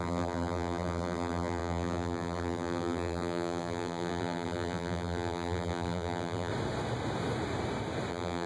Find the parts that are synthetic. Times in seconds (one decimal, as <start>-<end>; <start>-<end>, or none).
0.0-6.5; 8.1-8.5